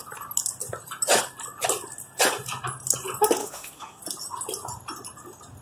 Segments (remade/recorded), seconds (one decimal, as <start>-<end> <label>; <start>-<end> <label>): 0.0-3.4 recorded; 3.4-4.0 remade; 4.0-5.6 recorded